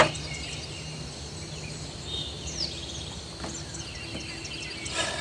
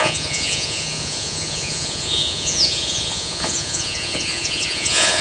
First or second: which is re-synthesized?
second